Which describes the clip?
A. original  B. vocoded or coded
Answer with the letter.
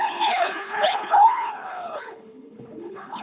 B